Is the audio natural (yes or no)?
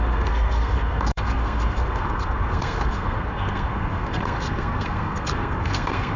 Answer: no